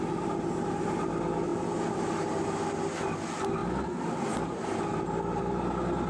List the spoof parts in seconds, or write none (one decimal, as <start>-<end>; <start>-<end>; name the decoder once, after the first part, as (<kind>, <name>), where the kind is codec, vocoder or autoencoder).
none